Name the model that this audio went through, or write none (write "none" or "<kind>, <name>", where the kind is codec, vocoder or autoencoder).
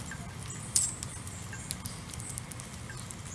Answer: none